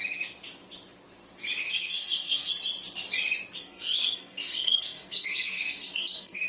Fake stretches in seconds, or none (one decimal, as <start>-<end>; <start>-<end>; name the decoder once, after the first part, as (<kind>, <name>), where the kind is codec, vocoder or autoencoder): 1.6-2.5 (codec, SNAC); 3.6-6.5